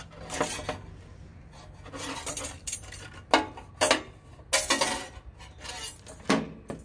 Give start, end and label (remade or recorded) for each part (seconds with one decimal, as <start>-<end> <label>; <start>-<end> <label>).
0.0-6.8 recorded